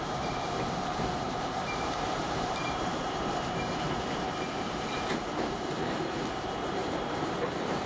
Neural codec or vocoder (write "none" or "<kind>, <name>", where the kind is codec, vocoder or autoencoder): vocoder, BigVGAN v2